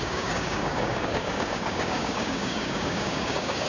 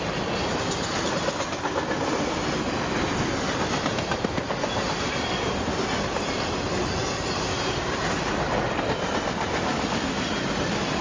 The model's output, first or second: first